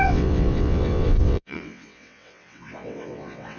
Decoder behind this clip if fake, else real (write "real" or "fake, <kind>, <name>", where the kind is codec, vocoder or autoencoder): fake, vocoder, WaveNeXt